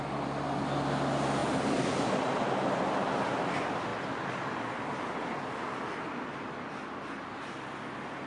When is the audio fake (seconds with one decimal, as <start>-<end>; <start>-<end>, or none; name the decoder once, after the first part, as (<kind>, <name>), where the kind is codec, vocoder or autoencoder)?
none

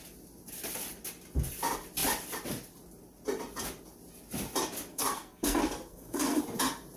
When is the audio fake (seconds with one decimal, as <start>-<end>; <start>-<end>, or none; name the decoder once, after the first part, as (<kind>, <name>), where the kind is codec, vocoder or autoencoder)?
4.9-6.4 (codec, SNAC)

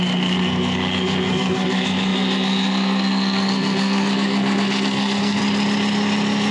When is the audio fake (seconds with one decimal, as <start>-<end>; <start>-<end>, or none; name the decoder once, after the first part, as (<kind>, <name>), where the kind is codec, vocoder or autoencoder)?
0.0-5.4 (codec, SNAC)

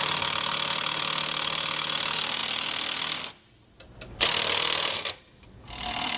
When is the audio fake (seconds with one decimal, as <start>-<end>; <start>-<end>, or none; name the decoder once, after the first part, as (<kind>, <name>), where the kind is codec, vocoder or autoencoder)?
none